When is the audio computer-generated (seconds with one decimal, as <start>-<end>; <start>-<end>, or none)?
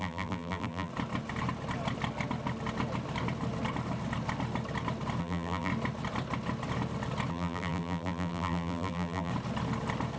0.0-0.9; 5.2-5.7; 7.3-9.3